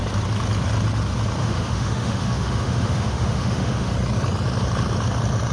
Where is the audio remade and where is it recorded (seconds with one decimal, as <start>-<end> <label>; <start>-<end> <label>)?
0.0-1.4 recorded; 1.4-3.9 remade; 3.9-5.5 recorded